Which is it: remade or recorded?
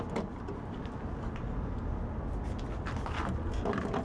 recorded